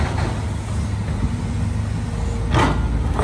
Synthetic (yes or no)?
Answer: no